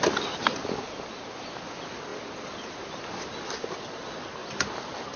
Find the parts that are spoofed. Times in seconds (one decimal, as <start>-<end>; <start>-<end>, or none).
none